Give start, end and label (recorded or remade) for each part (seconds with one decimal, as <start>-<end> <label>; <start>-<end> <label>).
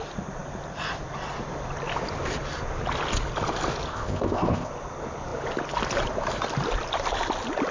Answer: 0.0-3.9 recorded; 3.9-4.7 remade; 4.7-7.7 recorded